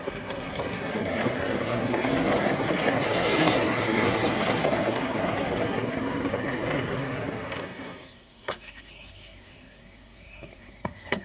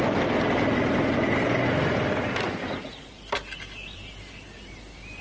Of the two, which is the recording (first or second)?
second